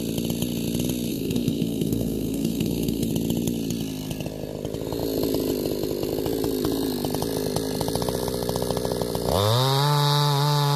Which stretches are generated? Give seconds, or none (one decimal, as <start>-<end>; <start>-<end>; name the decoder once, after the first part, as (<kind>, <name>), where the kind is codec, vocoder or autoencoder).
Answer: 1.1-3.1 (codec, SNAC)